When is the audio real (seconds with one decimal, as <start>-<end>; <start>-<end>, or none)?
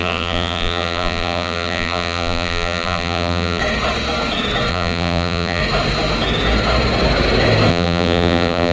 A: 3.6-4.7; 5.6-7.7